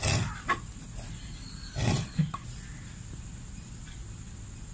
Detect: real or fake real